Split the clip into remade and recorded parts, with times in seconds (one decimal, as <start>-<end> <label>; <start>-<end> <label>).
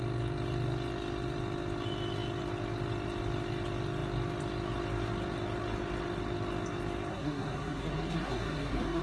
0.0-7.1 recorded; 7.1-9.0 remade